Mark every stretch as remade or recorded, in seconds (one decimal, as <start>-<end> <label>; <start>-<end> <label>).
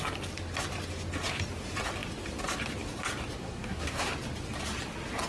0.0-3.4 recorded; 3.4-4.1 remade; 4.1-5.3 recorded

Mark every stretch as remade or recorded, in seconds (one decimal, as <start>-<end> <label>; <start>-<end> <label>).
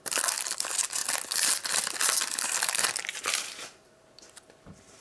0.0-3.1 recorded; 3.1-5.0 remade